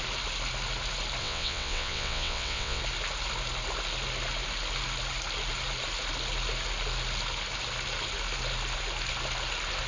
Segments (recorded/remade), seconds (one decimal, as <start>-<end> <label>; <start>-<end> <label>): 0.0-1.2 recorded; 1.2-2.8 remade; 2.8-9.9 recorded